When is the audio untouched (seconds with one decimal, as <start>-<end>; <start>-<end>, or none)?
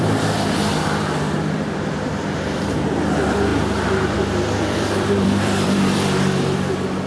none